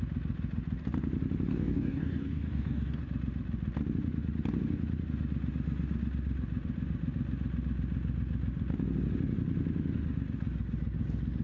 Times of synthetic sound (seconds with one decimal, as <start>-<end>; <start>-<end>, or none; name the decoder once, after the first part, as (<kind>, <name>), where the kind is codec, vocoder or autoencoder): 1.5-3.0 (codec, DAC)